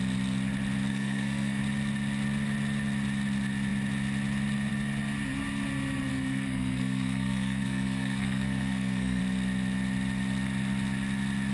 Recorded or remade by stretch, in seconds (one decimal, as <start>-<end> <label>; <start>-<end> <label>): 0.0-0.9 recorded; 0.9-1.6 remade; 1.6-6.1 recorded; 6.1-9.2 remade; 9.2-11.5 recorded